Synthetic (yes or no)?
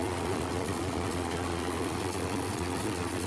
yes